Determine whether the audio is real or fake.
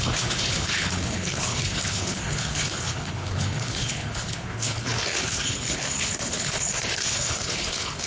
fake